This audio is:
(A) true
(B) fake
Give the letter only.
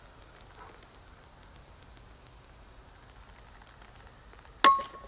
A